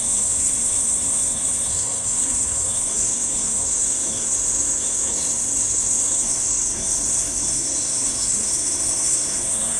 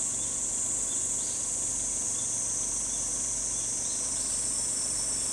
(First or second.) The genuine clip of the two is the second